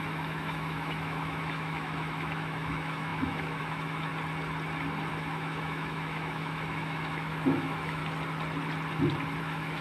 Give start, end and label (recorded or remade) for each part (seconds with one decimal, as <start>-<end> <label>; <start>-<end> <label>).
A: 0.0-4.1 remade; 4.1-5.1 recorded; 5.1-8.0 remade; 8.0-9.4 recorded; 9.4-9.8 remade